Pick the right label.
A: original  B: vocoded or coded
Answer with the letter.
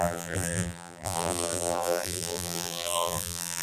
B